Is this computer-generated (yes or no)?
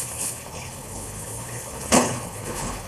yes